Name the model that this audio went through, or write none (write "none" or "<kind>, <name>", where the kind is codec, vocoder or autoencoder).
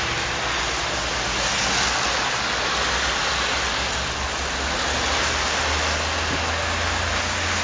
none